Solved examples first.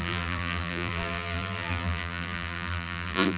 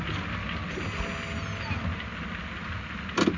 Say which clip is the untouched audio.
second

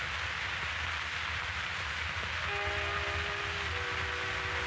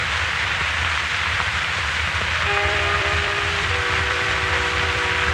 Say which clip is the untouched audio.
first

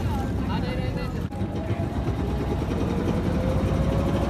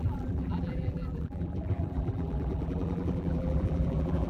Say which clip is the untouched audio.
first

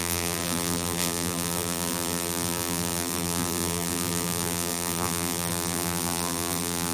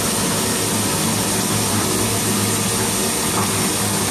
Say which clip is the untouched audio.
second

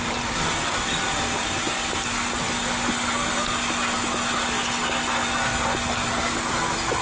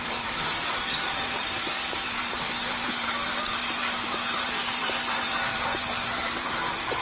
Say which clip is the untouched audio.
first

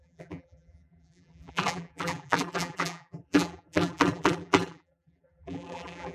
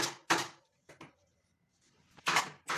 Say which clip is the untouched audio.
second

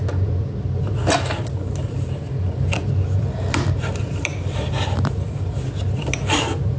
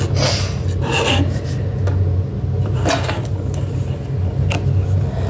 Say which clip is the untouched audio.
second